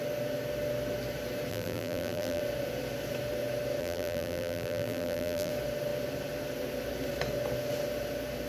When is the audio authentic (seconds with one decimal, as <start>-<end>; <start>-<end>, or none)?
0.0-1.5; 2.4-3.8; 5.5-8.5